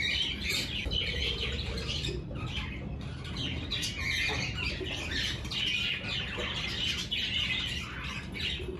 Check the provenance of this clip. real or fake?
real